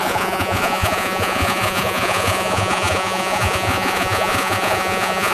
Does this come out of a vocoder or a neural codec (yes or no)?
yes